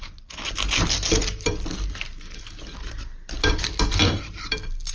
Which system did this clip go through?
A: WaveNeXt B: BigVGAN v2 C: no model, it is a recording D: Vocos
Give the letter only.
C